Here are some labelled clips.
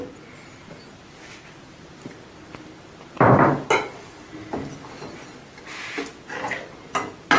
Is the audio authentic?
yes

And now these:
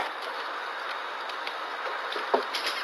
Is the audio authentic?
yes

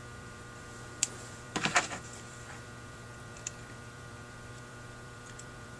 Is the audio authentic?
no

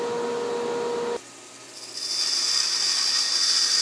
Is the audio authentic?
yes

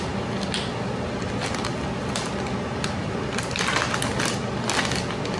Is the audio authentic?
yes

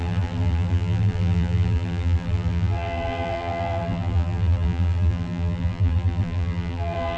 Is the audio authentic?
no